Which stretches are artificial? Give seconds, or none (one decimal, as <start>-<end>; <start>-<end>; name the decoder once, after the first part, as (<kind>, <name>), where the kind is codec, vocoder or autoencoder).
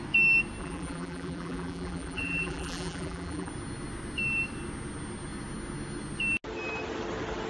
0.6-3.5 (vocoder, BigVGAN v2)